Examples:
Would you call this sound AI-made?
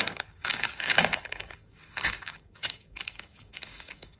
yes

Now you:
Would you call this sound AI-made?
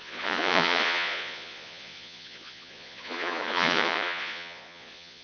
yes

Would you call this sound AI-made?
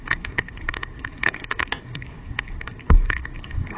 yes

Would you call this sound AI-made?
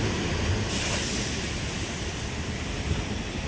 no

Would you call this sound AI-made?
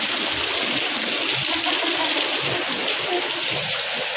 no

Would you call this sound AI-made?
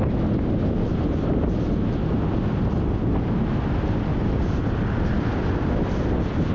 no